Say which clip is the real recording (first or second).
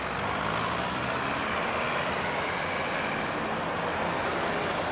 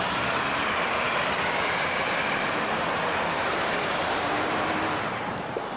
first